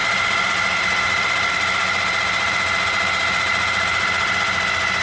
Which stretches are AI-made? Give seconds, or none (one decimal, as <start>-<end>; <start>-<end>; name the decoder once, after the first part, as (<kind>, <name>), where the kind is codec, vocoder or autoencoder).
none